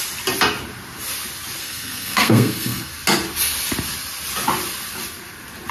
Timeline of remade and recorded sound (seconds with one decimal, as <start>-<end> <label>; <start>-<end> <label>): 0.0-1.6 recorded; 1.6-2.9 remade; 2.9-5.7 recorded